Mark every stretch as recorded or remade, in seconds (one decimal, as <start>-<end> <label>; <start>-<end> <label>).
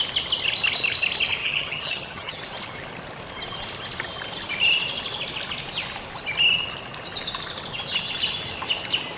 0.0-1.4 recorded; 1.4-2.4 remade; 2.4-9.2 recorded